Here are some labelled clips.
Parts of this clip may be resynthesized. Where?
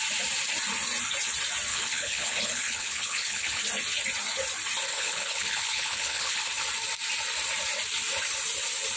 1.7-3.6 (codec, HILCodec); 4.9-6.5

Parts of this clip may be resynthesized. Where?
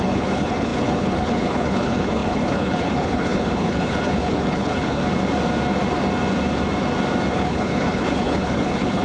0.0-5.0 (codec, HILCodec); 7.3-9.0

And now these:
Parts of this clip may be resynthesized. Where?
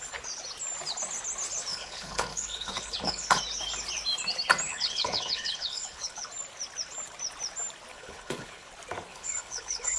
1.7-3.4 (codec, HILCodec); 4.7-6.3; 7.9-8.7; 9.1-10.0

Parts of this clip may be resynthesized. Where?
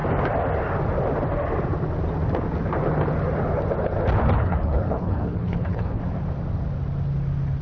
4.4-6.0 (codec, HILCodec)